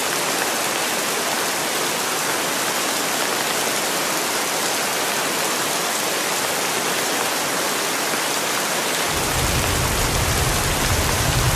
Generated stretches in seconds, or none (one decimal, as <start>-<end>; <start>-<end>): none